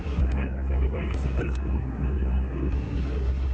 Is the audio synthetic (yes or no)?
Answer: yes